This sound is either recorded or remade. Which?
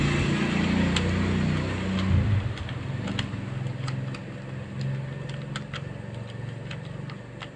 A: recorded